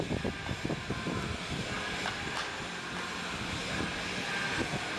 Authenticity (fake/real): real